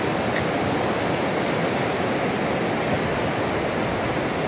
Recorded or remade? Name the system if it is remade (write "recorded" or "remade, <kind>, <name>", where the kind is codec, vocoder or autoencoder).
recorded